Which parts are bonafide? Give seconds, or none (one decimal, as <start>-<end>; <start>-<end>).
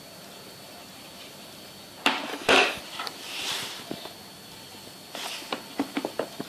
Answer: 0.0-2.3; 2.8-6.5